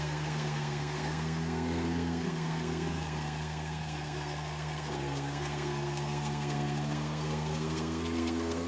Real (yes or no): no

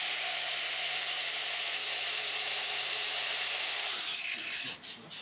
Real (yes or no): yes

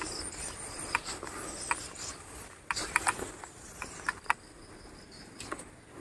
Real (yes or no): yes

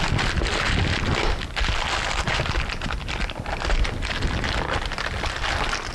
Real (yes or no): yes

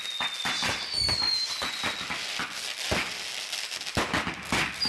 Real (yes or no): yes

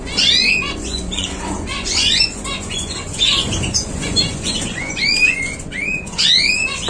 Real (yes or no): no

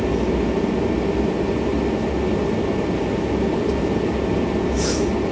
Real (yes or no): yes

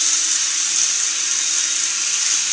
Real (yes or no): yes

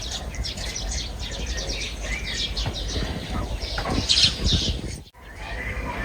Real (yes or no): yes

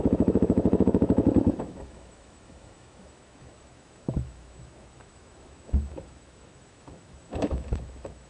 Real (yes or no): no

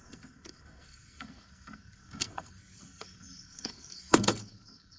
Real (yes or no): no